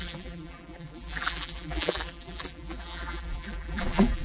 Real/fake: fake